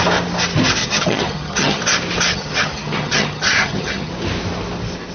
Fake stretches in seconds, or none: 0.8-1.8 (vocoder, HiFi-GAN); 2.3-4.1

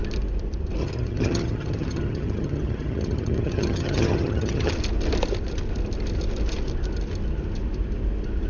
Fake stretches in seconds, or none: 0.8-4.7 (vocoder, HiFi-GAN)

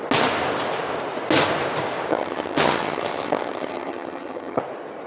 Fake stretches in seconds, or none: 2.1-4.6 (vocoder, HiFi-GAN)

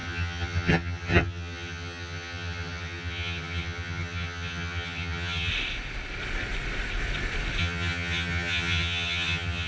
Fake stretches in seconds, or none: 0.0-5.5 (vocoder, HiFi-GAN); 7.6-9.7

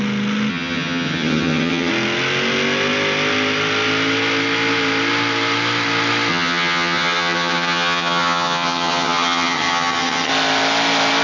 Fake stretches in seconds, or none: 0.5-1.9 (vocoder, HiFi-GAN); 6.3-10.3

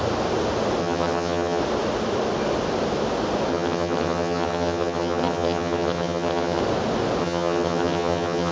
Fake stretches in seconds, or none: 0.8-1.6 (vocoder, HiFi-GAN); 3.5-6.6; 7.2-8.5

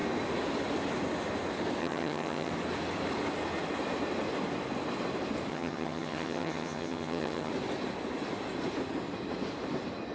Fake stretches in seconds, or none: 1.8-2.5 (vocoder, HiFi-GAN); 5.5-7.5